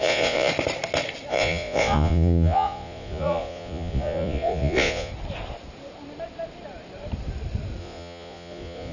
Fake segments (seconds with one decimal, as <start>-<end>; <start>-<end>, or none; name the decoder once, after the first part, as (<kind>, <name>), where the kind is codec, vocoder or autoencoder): 0.0-0.5 (vocoder, Vocos); 1.3-5.1; 7.8-8.9